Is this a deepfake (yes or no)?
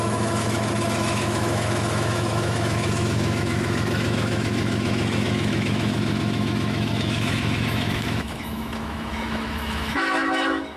yes